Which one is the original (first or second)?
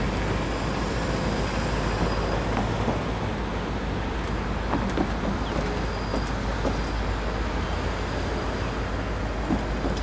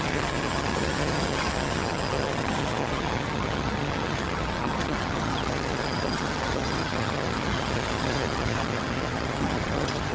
first